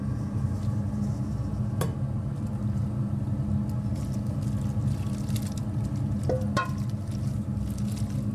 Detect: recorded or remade recorded